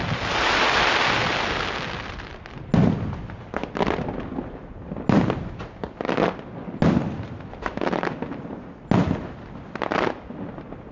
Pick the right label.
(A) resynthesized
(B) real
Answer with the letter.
B